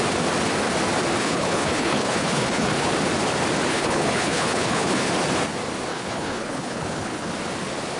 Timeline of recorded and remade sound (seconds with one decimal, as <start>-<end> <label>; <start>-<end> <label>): 0.0-1.2 recorded; 1.2-2.9 remade; 2.9-3.7 recorded; 3.7-5.1 remade; 5.1-5.9 recorded; 5.9-7.3 remade; 7.3-8.0 recorded